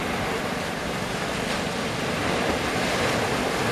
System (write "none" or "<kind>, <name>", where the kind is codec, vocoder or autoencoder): none